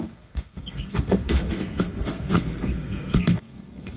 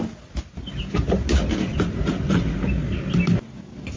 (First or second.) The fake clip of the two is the first